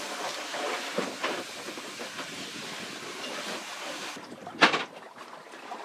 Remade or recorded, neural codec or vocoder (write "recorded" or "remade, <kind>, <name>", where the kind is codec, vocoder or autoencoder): recorded